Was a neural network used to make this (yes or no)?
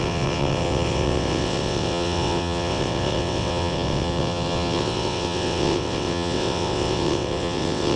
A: yes